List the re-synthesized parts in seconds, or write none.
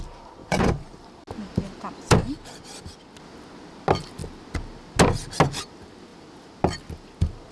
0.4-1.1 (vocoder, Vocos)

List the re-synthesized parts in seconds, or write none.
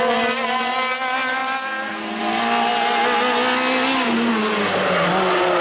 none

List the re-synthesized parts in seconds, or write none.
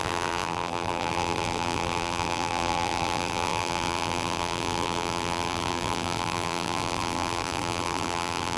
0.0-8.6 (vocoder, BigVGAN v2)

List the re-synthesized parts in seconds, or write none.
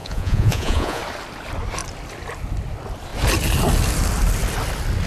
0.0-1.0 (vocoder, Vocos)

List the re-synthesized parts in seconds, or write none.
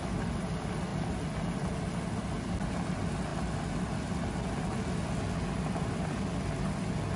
none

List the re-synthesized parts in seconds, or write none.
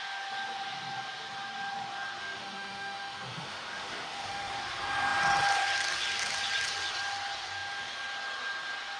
2.2-4.5 (autoencoder, DAC-VAE)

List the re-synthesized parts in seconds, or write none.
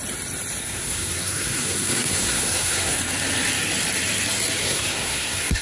0.6-3.0 (codec, SNAC); 4.6-5.6